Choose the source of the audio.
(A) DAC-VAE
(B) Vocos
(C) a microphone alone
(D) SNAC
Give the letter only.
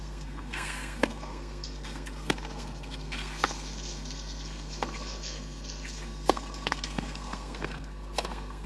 D